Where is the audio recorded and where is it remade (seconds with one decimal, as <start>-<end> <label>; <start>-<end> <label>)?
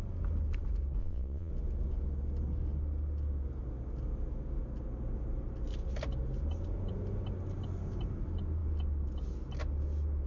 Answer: 0.0-1.0 recorded; 1.0-1.5 remade; 1.5-10.3 recorded